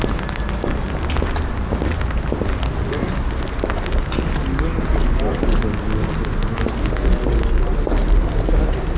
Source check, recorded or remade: recorded